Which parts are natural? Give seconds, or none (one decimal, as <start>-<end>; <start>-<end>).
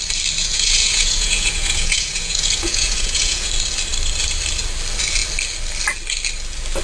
0.0-0.4; 3.5-6.8